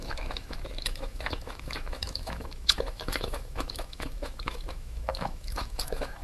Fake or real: fake